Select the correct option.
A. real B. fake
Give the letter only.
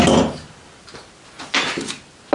A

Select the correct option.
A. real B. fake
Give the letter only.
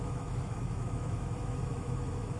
B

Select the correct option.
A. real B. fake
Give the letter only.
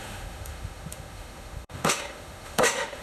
B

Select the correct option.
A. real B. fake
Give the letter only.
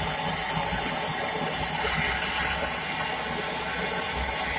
A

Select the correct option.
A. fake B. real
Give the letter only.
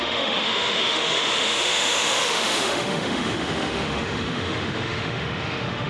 A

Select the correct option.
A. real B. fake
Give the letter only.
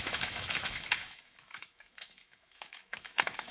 B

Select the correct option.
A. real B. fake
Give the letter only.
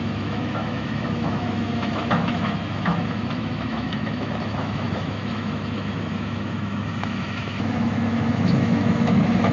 B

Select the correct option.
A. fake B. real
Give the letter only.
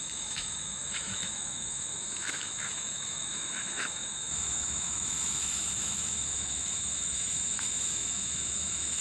A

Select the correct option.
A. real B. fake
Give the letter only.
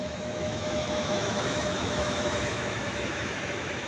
B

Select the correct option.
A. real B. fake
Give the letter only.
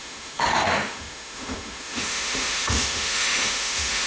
B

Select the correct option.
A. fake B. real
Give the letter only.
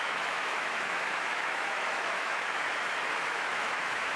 A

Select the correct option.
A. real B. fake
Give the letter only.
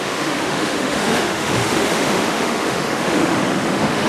B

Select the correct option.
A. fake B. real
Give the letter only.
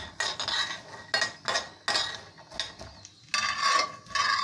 B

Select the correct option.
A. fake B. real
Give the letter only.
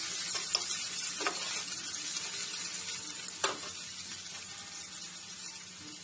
B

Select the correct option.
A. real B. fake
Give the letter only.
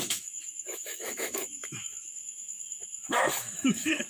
B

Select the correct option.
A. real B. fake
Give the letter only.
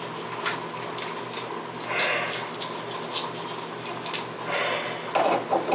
A